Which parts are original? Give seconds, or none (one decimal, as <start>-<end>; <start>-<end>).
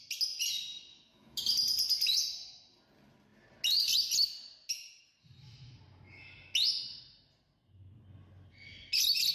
0.0-0.9; 1.4-9.3